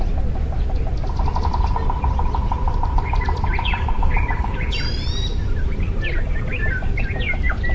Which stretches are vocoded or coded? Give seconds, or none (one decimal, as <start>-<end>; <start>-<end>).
2.4-7.0